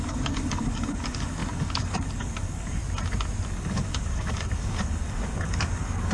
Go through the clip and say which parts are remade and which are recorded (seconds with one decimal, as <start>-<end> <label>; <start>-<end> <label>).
0.0-2.8 remade; 2.8-3.5 recorded; 3.5-6.1 remade